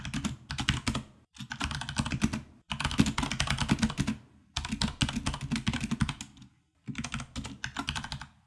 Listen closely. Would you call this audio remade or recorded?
recorded